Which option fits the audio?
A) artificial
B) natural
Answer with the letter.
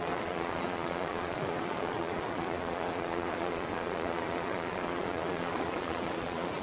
A